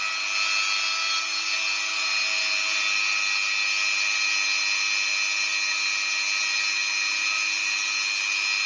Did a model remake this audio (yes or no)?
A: no